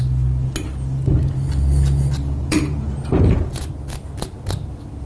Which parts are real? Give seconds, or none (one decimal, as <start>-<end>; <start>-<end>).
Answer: 0.0-2.4; 3.7-5.1